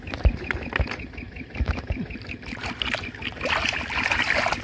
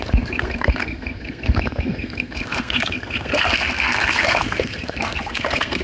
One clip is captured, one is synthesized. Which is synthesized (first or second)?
second